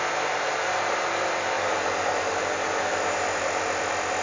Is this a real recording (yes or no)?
yes